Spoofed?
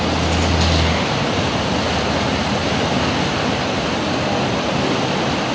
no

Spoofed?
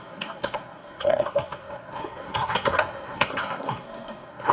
yes